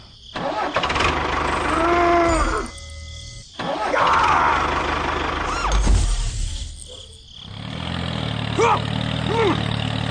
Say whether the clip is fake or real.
real